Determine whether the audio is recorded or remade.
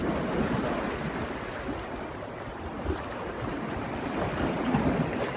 recorded